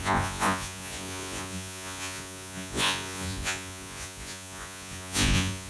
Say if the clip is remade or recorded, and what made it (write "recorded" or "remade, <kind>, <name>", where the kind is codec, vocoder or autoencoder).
remade, vocoder, Vocos